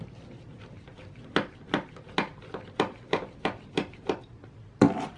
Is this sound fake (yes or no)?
no